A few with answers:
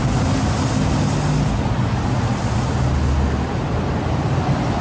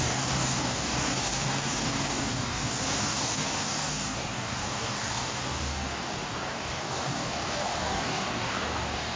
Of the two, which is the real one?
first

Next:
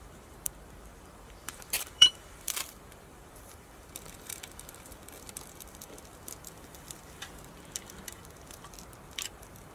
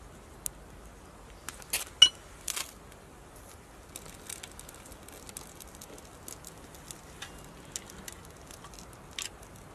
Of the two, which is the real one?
second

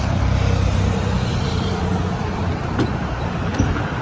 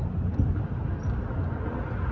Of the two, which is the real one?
second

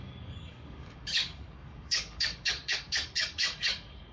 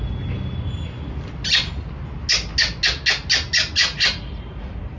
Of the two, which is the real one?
second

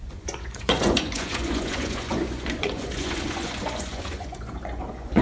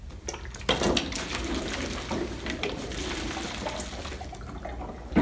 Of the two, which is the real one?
second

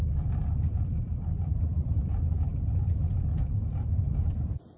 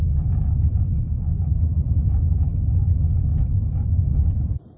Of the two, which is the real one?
second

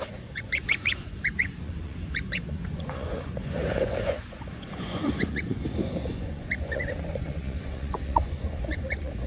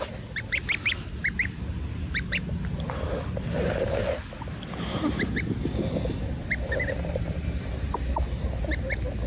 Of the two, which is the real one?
second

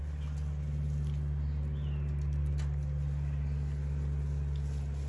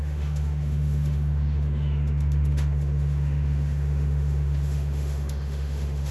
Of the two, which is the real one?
first